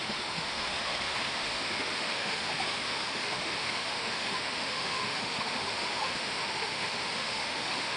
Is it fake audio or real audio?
fake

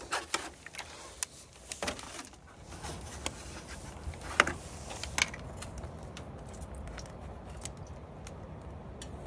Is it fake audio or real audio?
real